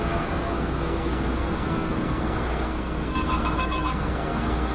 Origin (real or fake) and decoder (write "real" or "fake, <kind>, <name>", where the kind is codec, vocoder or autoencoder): fake, codec, SNAC